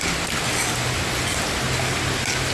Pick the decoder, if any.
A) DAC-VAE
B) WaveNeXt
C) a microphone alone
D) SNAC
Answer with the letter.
C